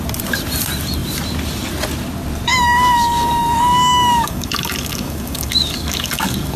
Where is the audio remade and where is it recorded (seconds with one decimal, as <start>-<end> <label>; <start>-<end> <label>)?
0.0-2.5 recorded; 2.5-6.6 remade